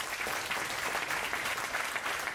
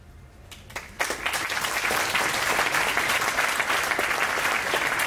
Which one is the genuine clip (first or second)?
second